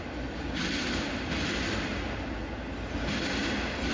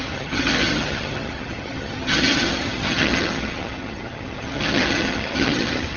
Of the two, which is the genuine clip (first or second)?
first